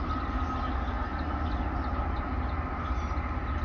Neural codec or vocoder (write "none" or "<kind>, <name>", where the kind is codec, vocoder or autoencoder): none